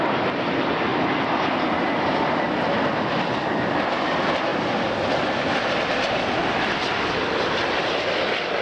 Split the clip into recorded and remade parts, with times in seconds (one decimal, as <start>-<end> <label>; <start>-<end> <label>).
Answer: 0.0-0.9 remade; 0.9-2.5 recorded; 2.5-4.5 remade; 4.5-5.2 recorded; 5.2-8.6 remade